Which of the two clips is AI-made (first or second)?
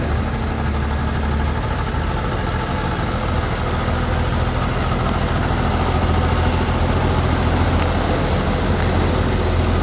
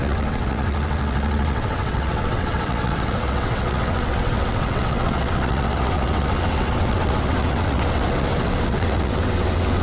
second